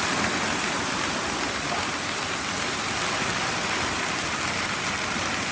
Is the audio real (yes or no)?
no